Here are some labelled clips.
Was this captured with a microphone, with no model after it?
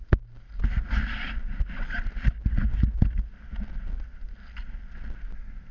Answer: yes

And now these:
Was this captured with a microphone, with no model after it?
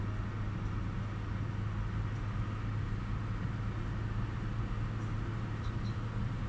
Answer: yes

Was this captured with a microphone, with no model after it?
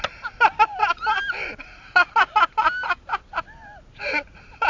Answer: yes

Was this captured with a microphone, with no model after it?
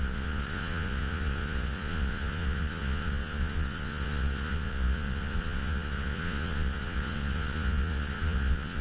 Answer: no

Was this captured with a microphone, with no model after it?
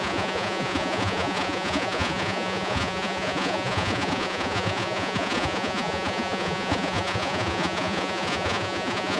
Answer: no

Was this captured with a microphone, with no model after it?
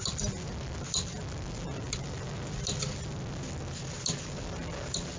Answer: yes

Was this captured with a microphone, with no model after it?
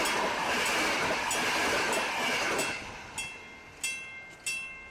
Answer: yes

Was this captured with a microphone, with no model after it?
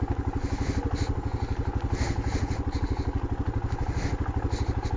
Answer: yes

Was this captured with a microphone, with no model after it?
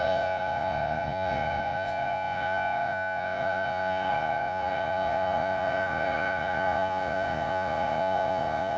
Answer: no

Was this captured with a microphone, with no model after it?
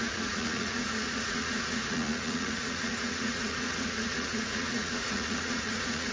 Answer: no